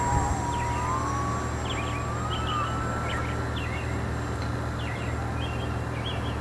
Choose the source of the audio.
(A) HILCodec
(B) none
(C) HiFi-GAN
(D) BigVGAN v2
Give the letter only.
B